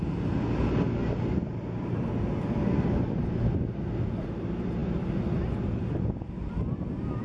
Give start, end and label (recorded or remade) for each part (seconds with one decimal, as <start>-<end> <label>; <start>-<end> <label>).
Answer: 0.0-7.2 recorded